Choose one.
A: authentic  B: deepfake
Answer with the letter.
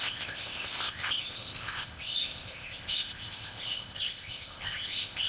B